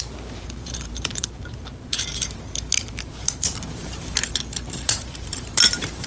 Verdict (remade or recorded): remade